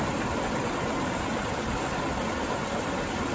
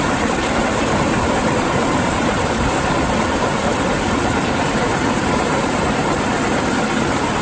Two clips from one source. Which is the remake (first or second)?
second